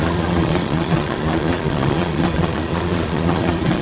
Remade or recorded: remade